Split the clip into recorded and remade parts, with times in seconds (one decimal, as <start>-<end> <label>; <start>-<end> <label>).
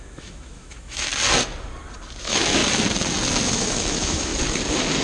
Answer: 0.0-1.1 remade; 1.1-2.2 recorded; 2.2-2.6 remade; 2.6-3.5 recorded; 3.5-4.3 remade; 4.3-5.0 recorded